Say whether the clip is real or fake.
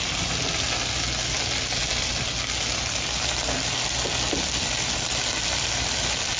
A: real